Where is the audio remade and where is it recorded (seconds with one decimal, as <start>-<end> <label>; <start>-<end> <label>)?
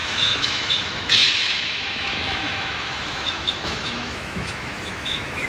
0.0-5.5 remade